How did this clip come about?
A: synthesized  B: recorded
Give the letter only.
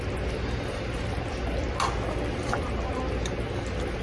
B